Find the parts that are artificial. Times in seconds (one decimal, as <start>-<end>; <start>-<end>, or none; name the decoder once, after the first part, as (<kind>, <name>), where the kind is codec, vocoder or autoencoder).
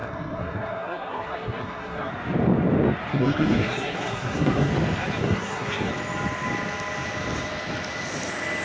0.0-2.1 (codec, SNAC); 3.1-4.7; 5.2-5.9